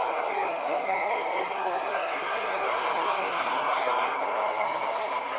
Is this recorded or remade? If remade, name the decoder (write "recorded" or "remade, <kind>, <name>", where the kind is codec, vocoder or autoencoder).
remade, codec, SNAC